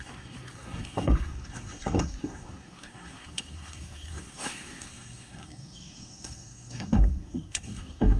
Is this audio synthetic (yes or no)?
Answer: yes